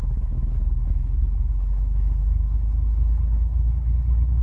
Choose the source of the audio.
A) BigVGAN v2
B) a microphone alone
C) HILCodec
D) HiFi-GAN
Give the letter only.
C